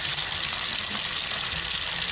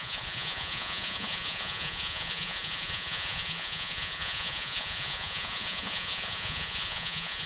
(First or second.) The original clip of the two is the first